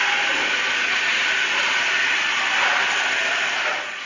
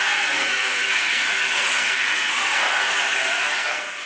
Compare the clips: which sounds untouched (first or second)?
first